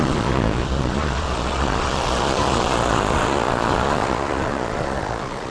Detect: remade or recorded remade